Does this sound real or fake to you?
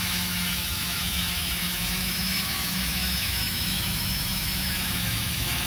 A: fake